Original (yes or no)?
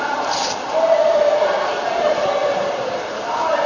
no